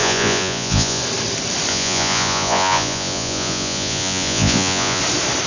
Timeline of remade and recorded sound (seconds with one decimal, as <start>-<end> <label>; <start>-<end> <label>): 0.0-1.0 remade; 1.0-1.7 recorded; 1.7-5.0 remade; 5.0-5.5 recorded